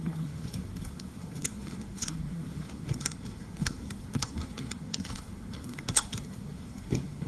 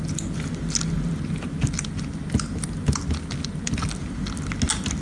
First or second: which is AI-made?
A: first